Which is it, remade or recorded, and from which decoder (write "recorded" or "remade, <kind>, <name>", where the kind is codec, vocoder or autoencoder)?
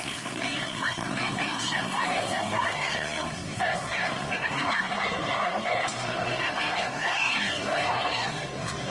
remade, codec, SNAC